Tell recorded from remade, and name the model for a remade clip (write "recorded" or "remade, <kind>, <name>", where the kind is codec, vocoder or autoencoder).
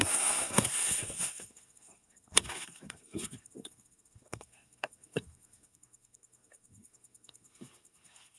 remade, codec, SNAC